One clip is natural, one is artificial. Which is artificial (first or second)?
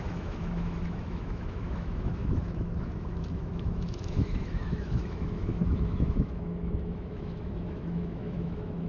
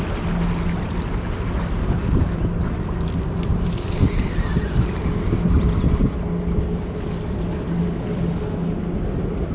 first